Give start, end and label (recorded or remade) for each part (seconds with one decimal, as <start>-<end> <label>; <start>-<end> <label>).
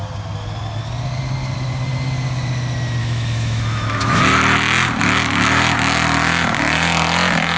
0.0-3.0 recorded; 3.0-4.2 remade; 4.2-7.6 recorded